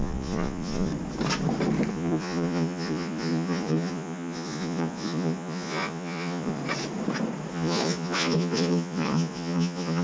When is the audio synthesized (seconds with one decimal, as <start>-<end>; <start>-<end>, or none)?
0.0-0.9; 1.9-6.6; 7.5-10.0